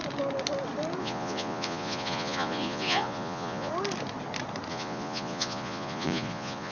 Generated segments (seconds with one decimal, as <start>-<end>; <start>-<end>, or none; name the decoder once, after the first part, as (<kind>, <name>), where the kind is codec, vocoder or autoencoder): 1.0-3.7 (vocoder, Vocos); 4.7-6.7